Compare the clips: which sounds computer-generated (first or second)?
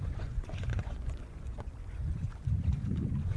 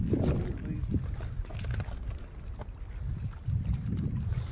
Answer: first